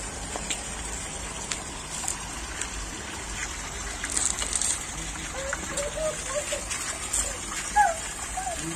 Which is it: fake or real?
real